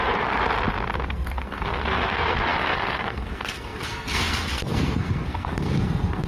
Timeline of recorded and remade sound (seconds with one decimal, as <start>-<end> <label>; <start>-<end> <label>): 0.0-0.4 remade; 0.4-1.1 recorded; 1.1-6.3 remade